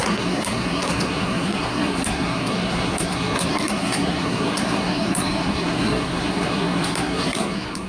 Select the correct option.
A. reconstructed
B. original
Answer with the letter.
A